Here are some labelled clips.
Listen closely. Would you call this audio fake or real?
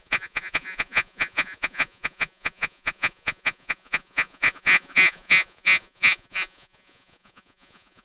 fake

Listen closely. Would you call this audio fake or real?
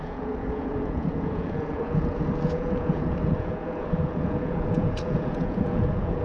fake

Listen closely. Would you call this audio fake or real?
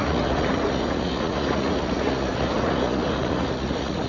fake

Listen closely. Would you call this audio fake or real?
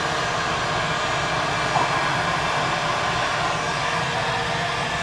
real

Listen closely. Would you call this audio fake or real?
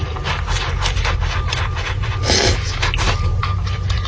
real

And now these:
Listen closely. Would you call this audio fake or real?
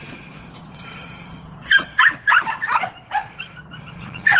fake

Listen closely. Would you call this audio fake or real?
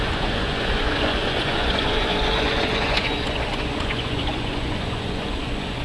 fake